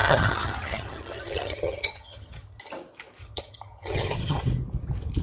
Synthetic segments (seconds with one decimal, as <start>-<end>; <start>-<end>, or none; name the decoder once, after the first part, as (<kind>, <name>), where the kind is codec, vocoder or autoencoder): 0.0-2.6 (vocoder, HiFi-GAN); 3.2-4.4